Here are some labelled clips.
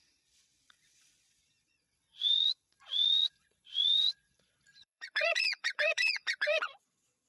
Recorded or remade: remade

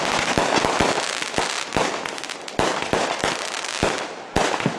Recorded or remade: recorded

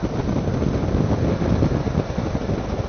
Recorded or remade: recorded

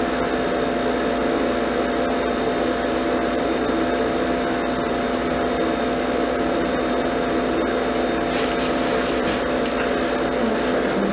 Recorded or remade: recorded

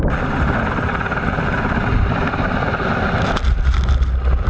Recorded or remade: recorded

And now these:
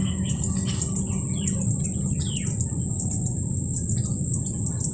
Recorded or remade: recorded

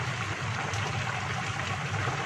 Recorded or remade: recorded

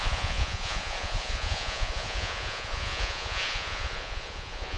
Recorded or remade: remade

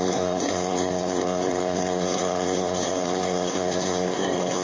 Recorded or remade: remade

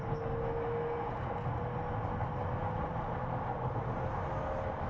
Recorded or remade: recorded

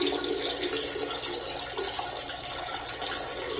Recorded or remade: recorded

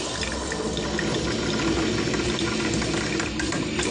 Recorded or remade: recorded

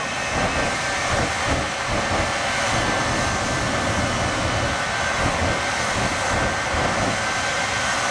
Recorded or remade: recorded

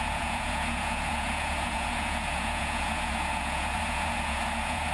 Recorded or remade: remade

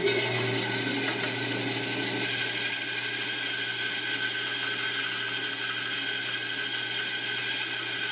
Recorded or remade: recorded